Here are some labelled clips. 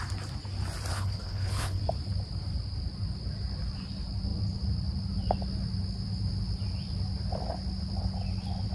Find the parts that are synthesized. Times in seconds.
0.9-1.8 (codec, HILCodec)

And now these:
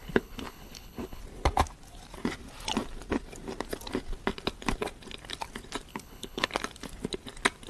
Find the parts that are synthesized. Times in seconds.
0.0-1.2 (codec, HILCodec); 5.9-6.5

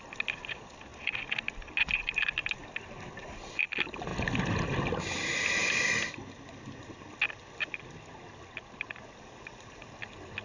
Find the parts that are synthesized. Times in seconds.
none

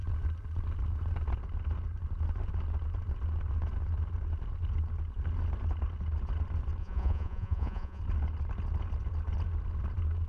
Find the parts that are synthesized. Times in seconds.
6.8-8.0 (vocoder, Vocos)

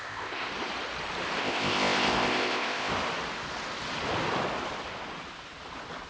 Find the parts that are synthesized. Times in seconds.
0.0-0.5 (codec, ZipCodec); 1.4-2.9